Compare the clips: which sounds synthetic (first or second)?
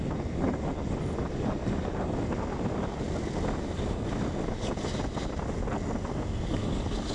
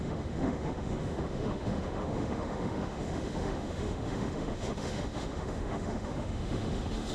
second